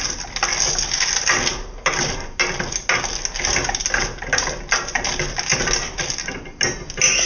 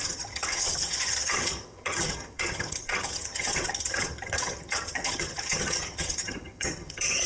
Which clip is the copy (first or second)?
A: second